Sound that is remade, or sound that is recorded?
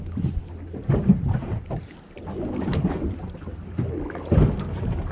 recorded